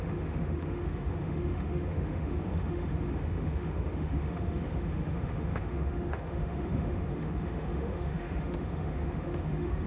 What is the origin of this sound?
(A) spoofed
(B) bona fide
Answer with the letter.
A